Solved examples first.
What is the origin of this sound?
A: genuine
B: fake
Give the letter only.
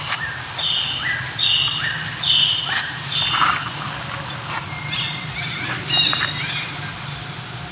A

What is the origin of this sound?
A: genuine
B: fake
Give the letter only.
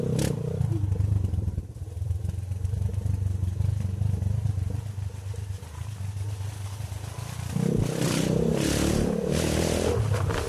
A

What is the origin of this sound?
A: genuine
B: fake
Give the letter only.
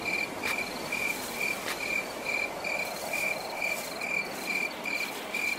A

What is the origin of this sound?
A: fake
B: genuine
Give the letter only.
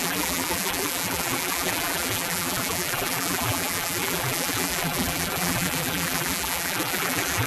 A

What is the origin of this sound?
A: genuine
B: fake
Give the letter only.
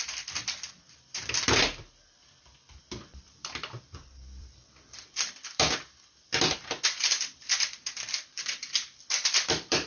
B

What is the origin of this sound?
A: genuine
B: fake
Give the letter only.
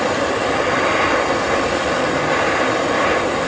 A